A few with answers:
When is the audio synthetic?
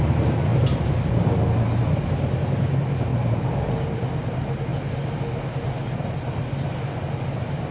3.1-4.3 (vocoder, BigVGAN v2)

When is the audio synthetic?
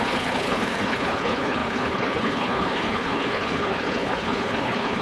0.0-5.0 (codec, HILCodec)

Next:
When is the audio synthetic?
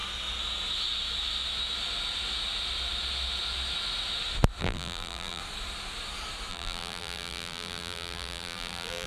4.6-5.4 (vocoder, BigVGAN v2); 6.5-9.1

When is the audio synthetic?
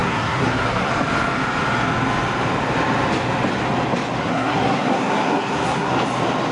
0.0-0.9 (codec, SNAC); 4.2-5.9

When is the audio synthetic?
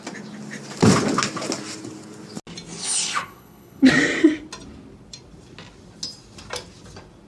2.8-3.9 (codec, HILCodec)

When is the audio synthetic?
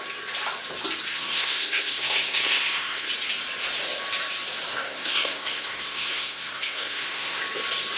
1.1-3.1 (codec, SNAC); 4.7-7.4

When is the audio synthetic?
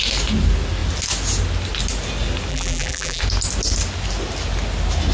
2.5-3.2 (vocoder, BigVGAN v2)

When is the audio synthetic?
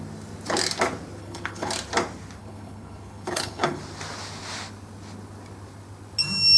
1.2-1.7 (codec, HILCodec); 2.4-3.8